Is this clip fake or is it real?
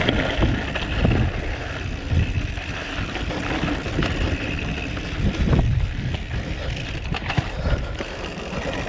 real